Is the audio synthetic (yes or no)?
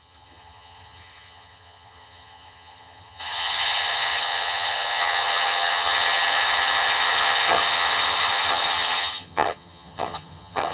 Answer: yes